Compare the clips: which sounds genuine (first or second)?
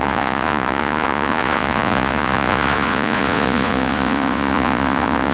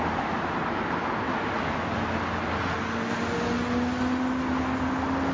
second